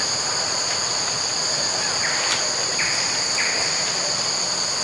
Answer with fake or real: real